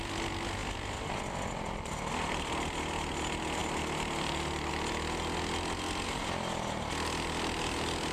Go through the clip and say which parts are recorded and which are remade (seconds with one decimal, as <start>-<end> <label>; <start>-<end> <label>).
0.0-8.1 recorded